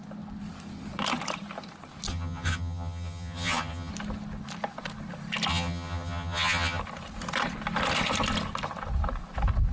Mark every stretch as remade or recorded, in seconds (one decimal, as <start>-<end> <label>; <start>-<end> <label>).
0.0-2.1 recorded; 2.1-3.9 remade; 3.9-5.5 recorded; 5.5-6.8 remade; 6.8-9.7 recorded